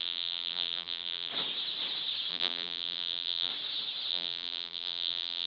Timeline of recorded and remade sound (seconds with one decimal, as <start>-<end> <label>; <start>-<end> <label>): 0.0-1.3 remade; 1.3-2.3 recorded; 2.3-3.5 remade; 3.5-4.1 recorded; 4.1-5.5 remade